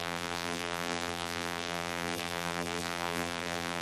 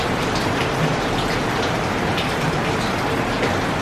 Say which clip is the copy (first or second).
first